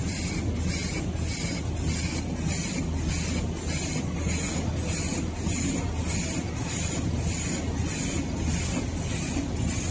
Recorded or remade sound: recorded